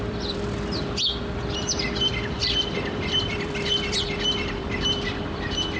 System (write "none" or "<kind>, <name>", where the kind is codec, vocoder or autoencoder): vocoder, BigVGAN v2